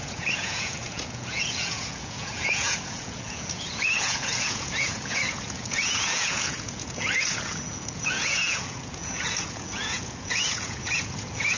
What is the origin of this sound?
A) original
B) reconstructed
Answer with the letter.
B